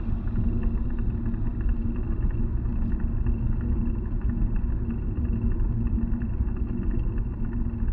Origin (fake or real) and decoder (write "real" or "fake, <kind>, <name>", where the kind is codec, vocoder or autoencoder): real